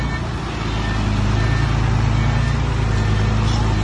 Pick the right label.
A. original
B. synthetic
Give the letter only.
A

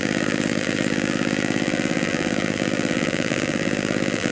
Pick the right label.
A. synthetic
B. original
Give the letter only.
A